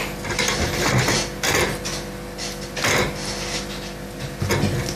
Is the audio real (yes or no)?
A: yes